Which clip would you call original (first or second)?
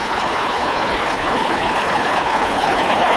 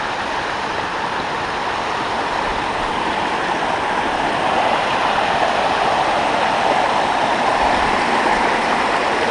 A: second